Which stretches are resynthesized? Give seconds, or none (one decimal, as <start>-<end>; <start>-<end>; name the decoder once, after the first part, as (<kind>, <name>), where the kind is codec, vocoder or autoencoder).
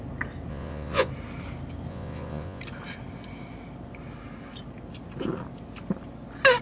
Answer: 0.5-1.1 (vocoder, Vocos); 1.9-2.6